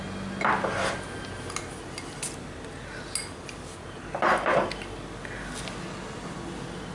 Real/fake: real